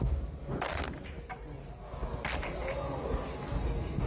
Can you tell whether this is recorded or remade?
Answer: recorded